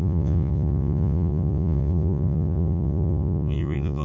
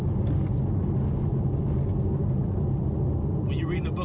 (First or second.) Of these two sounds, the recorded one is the second